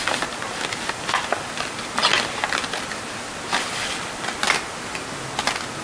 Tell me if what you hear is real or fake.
real